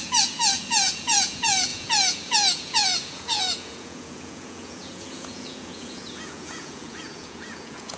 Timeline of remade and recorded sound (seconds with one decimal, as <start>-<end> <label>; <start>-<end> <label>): 0.0-8.0 remade